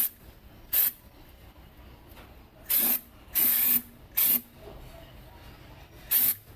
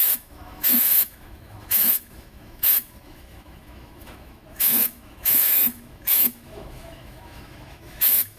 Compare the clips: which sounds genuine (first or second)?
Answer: first